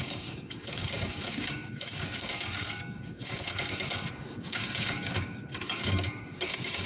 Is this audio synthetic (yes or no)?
yes